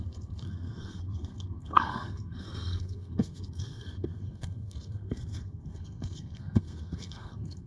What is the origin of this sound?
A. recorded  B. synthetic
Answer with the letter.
B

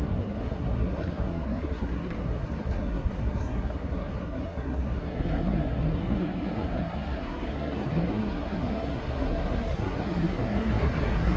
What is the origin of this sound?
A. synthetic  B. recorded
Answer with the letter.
A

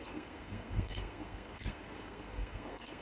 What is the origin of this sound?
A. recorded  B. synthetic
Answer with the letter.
B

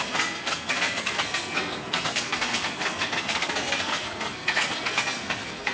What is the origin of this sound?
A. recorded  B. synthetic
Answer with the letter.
B